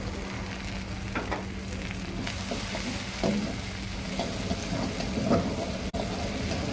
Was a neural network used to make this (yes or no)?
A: no